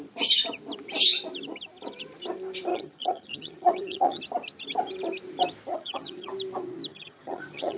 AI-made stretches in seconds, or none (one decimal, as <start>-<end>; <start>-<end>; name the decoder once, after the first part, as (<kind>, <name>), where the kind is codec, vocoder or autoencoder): 2.7-4.2 (vocoder, HiFi-GAN); 5.7-6.3; 6.9-7.8